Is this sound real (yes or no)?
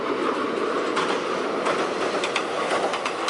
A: yes